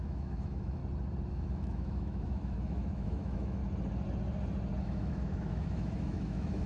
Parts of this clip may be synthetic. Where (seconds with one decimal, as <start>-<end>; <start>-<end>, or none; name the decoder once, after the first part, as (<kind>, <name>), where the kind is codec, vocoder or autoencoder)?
0.0-0.8 (autoencoder, DAC-VAE); 1.3-3.6; 4.8-6.7